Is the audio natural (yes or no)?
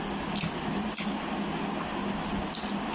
yes